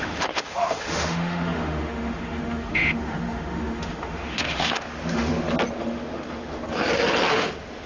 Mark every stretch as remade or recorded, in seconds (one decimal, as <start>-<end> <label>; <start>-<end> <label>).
0.0-5.3 remade; 5.3-5.8 recorded; 5.8-6.6 remade; 6.6-7.3 recorded; 7.3-7.9 remade